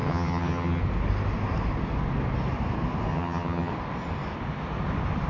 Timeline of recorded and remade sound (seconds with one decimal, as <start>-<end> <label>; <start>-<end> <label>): 0.0-0.8 remade; 0.8-3.1 recorded; 3.1-3.7 remade; 3.7-5.3 recorded